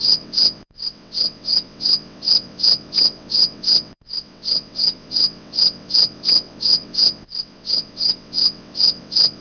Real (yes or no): no